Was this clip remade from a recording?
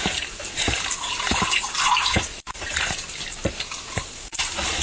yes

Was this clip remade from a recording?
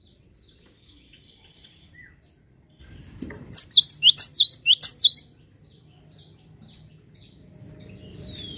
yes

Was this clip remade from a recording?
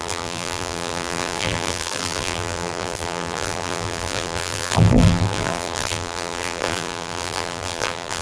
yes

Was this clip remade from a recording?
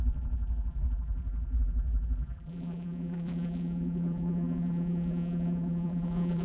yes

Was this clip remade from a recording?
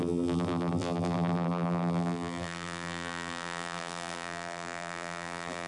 yes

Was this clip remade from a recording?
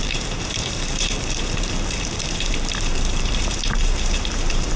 yes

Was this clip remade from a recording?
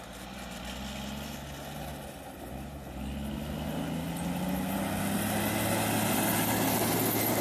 no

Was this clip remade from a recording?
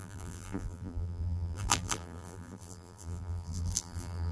yes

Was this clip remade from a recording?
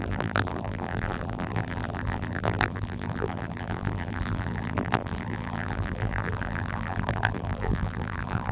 yes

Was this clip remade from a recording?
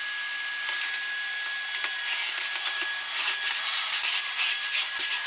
no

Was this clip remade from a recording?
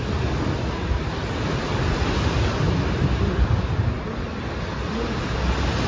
no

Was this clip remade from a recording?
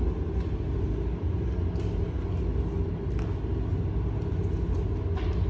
no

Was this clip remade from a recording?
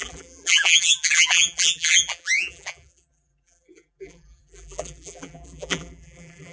yes